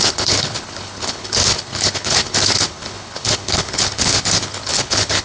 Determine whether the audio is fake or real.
fake